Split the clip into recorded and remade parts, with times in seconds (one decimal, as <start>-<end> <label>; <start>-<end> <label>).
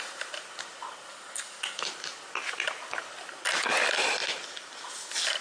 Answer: 0.0-1.1 recorded; 1.1-1.9 remade; 1.9-5.4 recorded